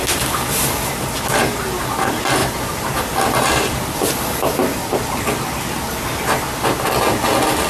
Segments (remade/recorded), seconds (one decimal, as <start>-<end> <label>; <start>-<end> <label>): 0.0-2.4 recorded; 2.4-5.1 remade; 5.1-7.7 recorded